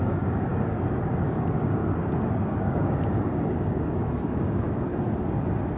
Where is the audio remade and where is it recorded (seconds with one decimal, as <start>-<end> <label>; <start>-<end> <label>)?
0.0-0.5 remade; 0.5-1.0 recorded; 1.0-1.8 remade; 1.8-2.3 recorded; 2.3-4.9 remade; 4.9-5.8 recorded